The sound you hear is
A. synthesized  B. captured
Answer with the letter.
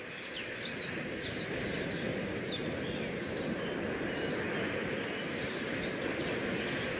B